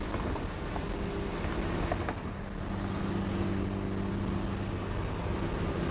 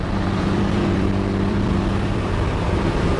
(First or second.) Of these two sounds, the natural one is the first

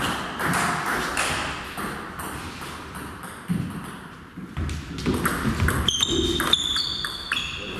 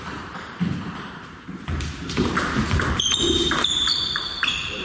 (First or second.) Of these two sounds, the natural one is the first